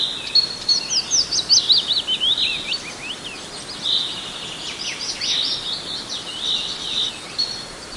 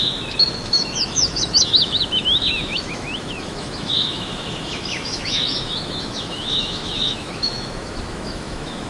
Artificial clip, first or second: second